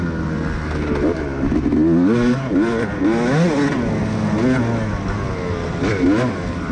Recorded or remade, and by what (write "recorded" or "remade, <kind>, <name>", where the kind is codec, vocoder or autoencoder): recorded